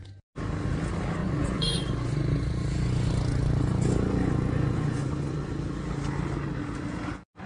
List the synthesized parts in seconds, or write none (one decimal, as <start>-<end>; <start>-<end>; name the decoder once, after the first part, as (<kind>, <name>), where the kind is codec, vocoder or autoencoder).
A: 1.2-5.5 (vocoder, Vocos)